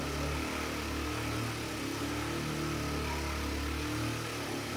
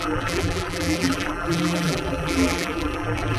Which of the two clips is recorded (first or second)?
first